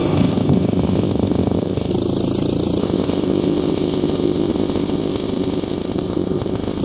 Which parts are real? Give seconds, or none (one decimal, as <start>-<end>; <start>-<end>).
1.9-2.8